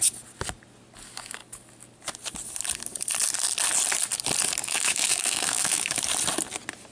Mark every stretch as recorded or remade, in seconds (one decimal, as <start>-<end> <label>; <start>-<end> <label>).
0.0-4.6 recorded; 4.6-6.0 remade; 6.0-6.9 recorded

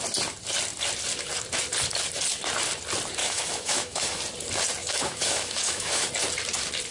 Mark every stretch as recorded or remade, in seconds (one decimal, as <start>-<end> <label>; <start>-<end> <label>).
0.0-3.2 recorded; 3.2-4.2 remade; 4.2-4.8 recorded; 4.8-6.1 remade; 6.1-6.9 recorded